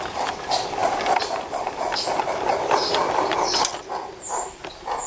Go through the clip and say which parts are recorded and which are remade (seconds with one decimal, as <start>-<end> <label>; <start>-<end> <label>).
0.0-5.1 recorded